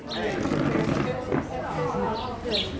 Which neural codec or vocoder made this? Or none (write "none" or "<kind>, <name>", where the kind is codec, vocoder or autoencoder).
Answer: none